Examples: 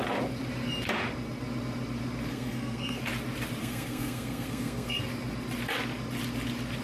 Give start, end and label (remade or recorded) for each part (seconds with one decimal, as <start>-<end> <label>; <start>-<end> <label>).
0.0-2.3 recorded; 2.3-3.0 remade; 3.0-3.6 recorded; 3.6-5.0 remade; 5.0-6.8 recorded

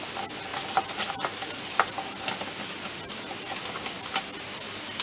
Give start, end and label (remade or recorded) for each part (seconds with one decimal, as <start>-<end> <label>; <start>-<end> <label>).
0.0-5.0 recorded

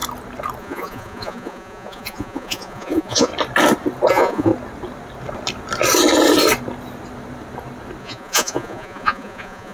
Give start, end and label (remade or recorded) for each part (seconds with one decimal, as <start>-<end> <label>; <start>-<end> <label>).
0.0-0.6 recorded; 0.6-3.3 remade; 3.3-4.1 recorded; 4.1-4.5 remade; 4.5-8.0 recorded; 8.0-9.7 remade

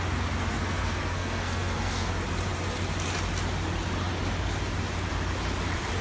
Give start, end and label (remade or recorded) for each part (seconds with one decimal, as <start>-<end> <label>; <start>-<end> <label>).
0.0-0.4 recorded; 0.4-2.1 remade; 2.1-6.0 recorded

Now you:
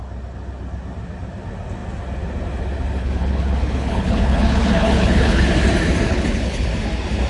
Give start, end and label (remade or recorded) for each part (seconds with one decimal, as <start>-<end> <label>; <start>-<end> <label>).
0.0-3.0 recorded; 3.0-5.4 remade; 5.4-6.1 recorded; 6.1-6.7 remade; 6.7-7.3 recorded

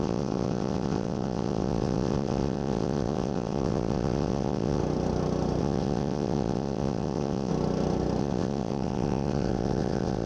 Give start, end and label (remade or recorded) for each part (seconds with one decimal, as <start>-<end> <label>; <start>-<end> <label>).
0.0-4.8 remade; 4.8-5.6 recorded; 5.6-7.5 remade; 7.5-8.2 recorded; 8.2-10.3 remade

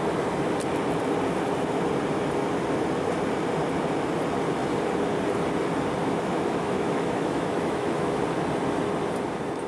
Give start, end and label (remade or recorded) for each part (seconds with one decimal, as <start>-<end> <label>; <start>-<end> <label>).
0.0-6.0 recorded; 6.0-8.2 remade; 8.2-9.7 recorded